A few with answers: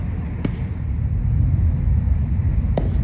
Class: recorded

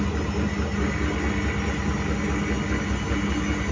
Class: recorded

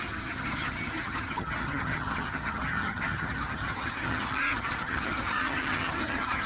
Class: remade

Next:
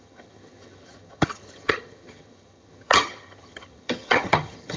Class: remade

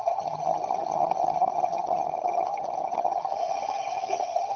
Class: remade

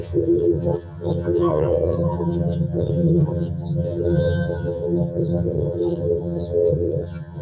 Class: remade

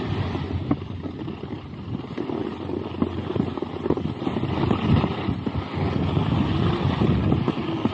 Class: recorded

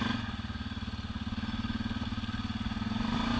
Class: recorded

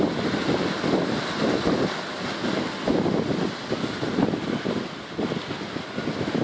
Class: recorded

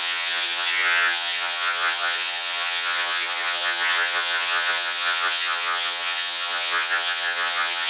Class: remade